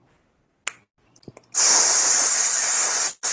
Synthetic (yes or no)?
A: no